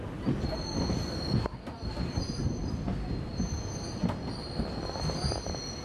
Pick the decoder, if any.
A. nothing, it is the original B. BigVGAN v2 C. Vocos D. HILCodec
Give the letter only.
A